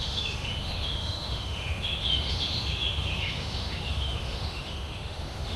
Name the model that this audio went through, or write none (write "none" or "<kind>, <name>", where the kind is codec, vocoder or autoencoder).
autoencoder, DAC-VAE